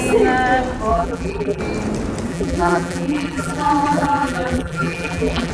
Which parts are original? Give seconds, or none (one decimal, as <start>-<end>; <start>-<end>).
0.0-0.9; 1.6-2.3